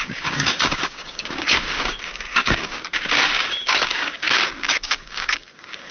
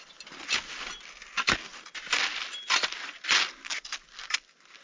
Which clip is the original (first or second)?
second